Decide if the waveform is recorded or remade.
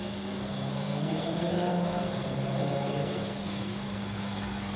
remade